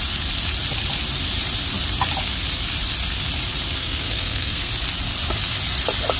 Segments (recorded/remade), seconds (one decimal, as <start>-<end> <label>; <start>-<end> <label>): 0.0-3.8 recorded; 3.8-4.7 remade; 4.7-6.2 recorded